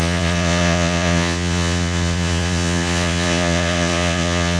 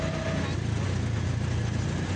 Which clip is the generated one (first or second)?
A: first